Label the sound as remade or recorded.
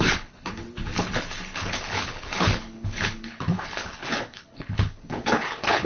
remade